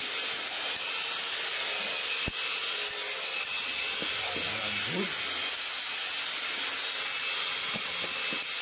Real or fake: real